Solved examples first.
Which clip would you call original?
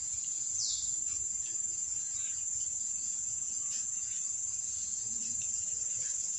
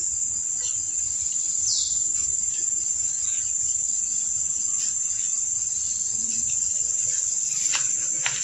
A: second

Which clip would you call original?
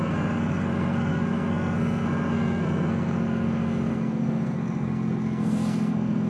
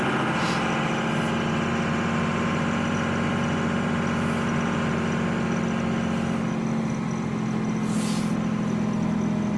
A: second